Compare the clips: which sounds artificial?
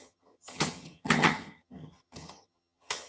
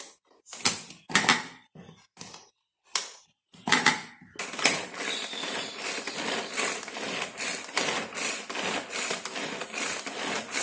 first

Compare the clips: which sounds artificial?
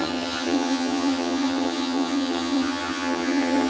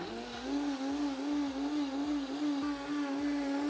first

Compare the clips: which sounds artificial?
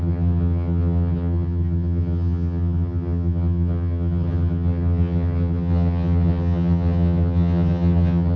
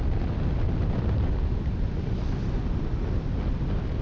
first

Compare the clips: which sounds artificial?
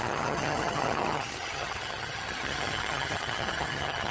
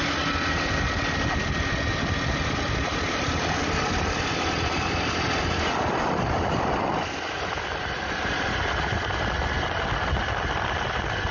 first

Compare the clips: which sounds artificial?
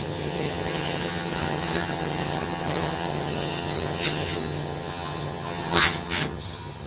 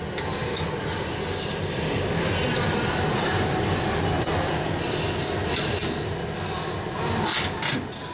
first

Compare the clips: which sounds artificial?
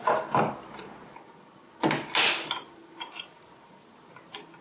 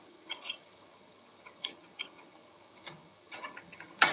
second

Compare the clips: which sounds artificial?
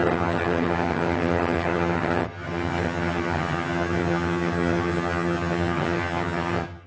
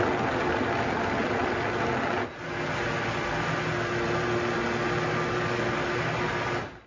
first